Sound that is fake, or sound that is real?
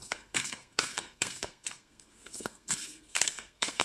fake